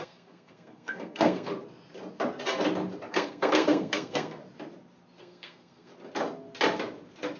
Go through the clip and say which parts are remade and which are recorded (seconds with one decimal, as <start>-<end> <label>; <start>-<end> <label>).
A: 0.0-1.5 remade; 1.5-3.1 recorded; 3.1-4.4 remade; 4.4-5.2 recorded; 5.2-5.9 remade; 5.9-7.4 recorded